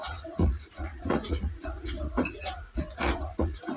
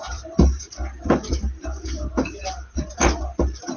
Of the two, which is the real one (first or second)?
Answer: second